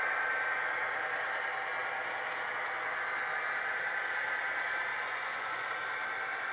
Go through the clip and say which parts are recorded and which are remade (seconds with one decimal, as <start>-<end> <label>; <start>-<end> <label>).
0.0-4.9 recorded; 4.9-5.7 remade; 5.7-6.5 recorded

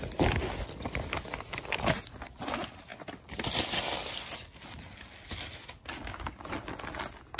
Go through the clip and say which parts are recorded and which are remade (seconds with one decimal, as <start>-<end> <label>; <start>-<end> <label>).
0.0-7.4 recorded

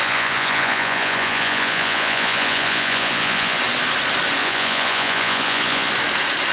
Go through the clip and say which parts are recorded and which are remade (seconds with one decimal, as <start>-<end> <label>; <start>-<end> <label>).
0.0-3.6 remade; 3.6-4.4 recorded; 4.4-5.9 remade; 5.9-6.5 recorded

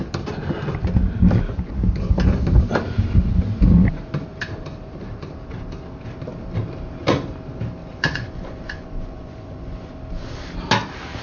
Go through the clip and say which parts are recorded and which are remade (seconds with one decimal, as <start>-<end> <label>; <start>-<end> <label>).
0.0-7.8 recorded; 7.8-9.9 remade; 9.9-11.2 recorded

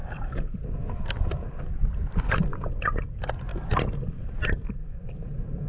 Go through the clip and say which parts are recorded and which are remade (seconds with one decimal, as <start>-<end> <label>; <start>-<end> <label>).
0.0-5.7 recorded